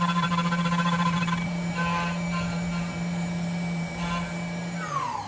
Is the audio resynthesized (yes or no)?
yes